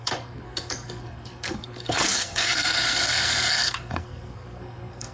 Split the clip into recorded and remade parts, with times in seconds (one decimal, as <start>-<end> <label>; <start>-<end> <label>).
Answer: 0.0-5.1 remade